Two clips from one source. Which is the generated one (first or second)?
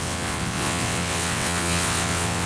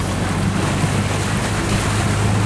first